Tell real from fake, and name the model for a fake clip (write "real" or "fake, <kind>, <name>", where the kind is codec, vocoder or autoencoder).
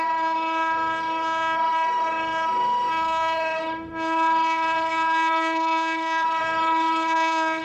fake, autoencoder, DAC-VAE